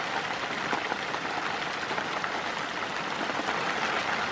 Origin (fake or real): real